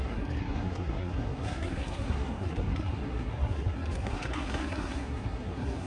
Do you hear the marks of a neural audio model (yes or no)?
yes